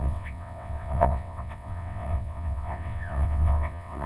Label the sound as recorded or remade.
remade